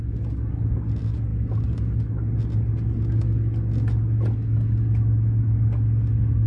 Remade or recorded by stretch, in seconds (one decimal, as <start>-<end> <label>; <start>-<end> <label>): 0.0-6.5 recorded